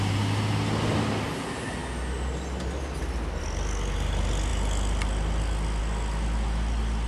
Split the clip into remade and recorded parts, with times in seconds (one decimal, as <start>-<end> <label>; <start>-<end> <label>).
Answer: 0.0-7.1 recorded